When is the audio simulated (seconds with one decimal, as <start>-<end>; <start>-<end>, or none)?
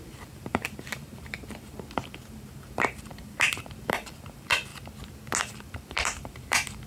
0.0-4.7; 5.4-6.9